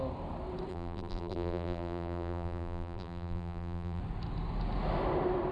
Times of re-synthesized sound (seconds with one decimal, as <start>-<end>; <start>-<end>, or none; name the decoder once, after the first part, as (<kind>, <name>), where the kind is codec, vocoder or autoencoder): 0.7-4.0 (vocoder, BigVGAN v2)